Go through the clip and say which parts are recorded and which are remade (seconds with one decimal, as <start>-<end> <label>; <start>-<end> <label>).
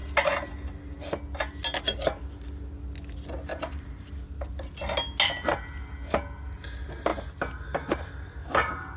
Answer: 0.0-3.5 recorded; 3.5-4.1 remade; 4.1-8.4 recorded; 8.4-9.0 remade